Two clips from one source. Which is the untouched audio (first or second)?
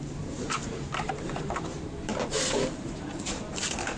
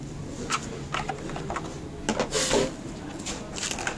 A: second